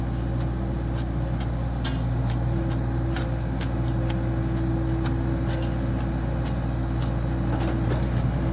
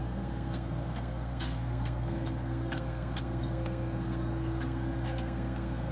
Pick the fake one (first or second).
second